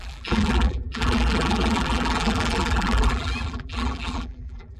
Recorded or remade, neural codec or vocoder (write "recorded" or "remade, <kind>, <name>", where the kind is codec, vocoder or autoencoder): remade, vocoder, BigVGAN v2